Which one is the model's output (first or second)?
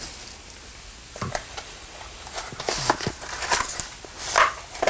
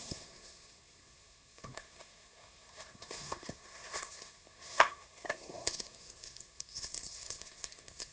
second